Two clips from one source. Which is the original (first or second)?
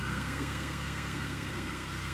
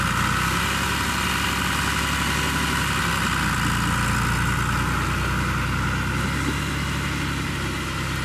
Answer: second